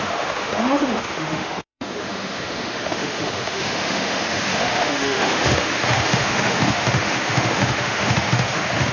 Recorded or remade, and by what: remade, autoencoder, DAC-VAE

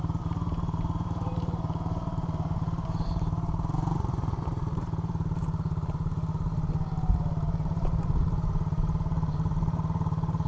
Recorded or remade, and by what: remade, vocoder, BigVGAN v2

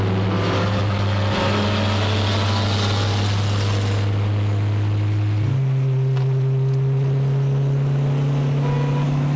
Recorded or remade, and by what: recorded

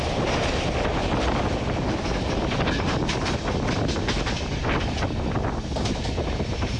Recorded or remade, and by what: recorded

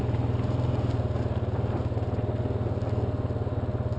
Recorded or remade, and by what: recorded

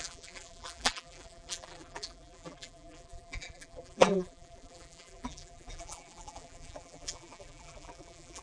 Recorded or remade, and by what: remade, vocoder, BigVGAN v2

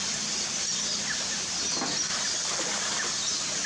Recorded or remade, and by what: recorded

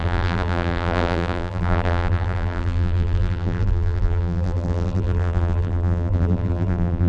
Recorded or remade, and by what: remade, vocoder, BigVGAN v2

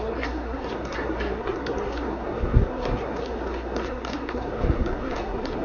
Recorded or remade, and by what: remade, codec, SNAC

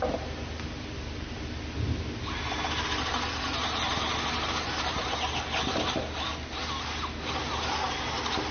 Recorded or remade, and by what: recorded